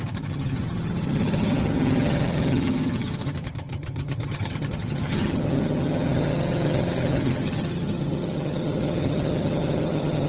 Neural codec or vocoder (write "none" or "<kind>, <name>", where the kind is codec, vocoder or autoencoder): vocoder, HiFi-GAN